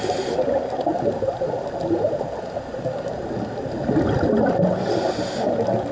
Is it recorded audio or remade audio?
recorded